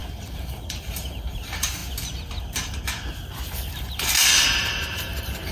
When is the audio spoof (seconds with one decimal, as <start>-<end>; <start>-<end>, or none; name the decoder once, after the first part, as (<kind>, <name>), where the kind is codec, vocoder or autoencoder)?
0.0-1.8 (vocoder, BigVGAN v2); 4.6-5.5